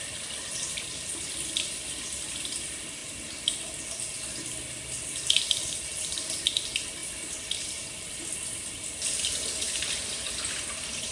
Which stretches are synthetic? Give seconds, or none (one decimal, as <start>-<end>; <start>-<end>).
0.0-3.0; 4.2-11.1